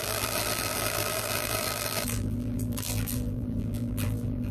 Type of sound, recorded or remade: remade